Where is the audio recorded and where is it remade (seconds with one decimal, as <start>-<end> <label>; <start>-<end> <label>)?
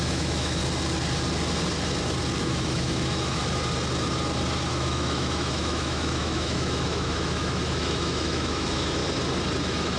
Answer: 0.0-0.6 remade; 0.6-2.4 recorded; 2.4-3.4 remade; 3.4-4.7 recorded; 4.7-9.0 remade; 9.0-9.6 recorded; 9.6-10.0 remade